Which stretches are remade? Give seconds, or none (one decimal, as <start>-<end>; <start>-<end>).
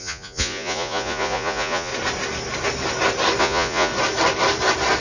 0.0-1.9; 3.4-3.9